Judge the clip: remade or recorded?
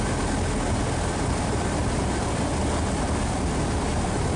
recorded